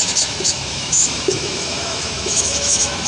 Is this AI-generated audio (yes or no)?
yes